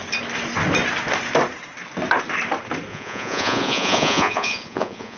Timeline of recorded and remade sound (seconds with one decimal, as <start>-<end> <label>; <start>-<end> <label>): 0.0-2.9 recorded; 2.9-5.2 remade